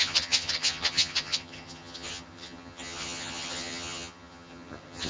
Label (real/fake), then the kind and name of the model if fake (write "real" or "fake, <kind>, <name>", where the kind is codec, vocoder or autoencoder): fake, vocoder, HiFi-GAN